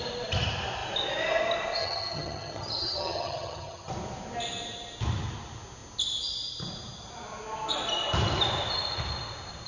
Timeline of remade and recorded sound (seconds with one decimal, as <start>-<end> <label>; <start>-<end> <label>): 0.0-1.8 recorded; 1.8-3.9 remade; 3.9-9.7 recorded